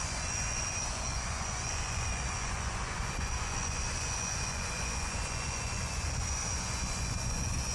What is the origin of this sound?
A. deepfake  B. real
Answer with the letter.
A